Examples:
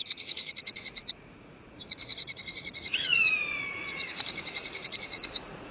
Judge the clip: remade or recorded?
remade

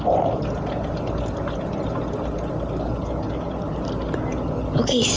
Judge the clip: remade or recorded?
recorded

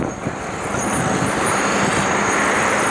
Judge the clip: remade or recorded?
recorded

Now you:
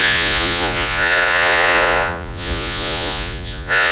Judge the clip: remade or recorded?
remade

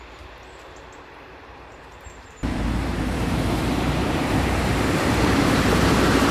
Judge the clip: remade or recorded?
remade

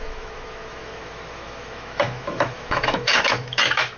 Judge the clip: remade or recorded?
remade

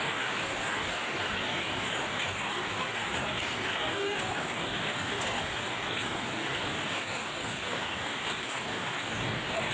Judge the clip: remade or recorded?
remade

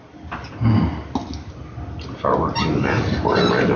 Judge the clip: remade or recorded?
recorded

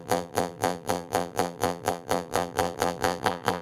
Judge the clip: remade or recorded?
remade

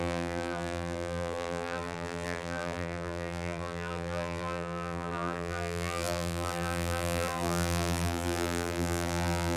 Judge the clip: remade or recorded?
remade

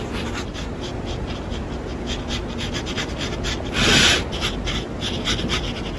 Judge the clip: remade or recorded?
recorded